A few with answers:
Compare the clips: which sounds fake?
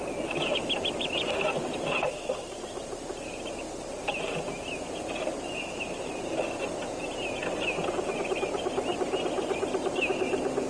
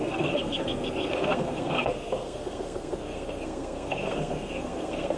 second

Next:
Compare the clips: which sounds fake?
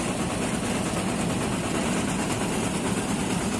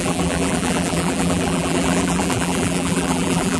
second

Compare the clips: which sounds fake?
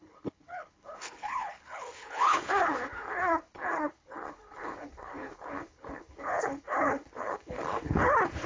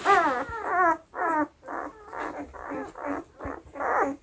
first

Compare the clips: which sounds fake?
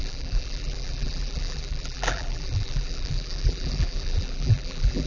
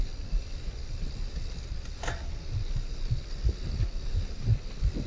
first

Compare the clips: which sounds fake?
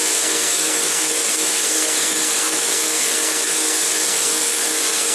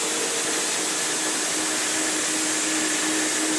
first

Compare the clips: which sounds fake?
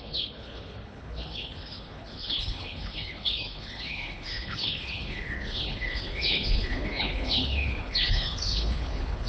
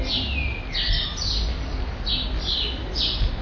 first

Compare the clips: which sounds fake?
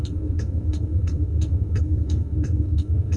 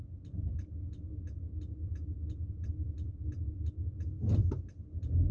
first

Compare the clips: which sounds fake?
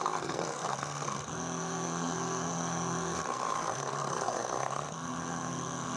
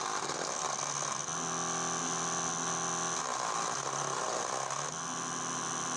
first